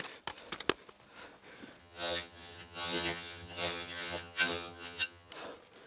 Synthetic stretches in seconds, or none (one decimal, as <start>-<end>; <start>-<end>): 1.8-5.3